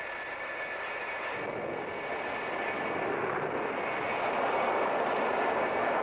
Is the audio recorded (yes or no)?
yes